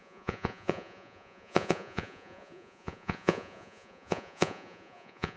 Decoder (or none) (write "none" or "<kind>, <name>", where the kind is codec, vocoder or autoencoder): vocoder, Vocos